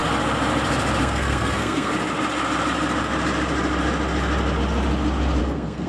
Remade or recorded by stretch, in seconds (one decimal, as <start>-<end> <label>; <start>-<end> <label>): 0.0-1.0 recorded; 1.0-1.9 remade; 1.9-5.4 recorded; 5.4-5.9 remade